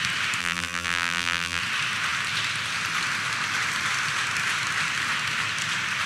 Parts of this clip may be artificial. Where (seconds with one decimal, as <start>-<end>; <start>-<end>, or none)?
0.4-1.6